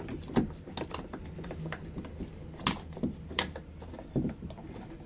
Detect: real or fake real